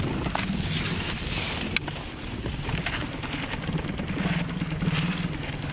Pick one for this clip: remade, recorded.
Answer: recorded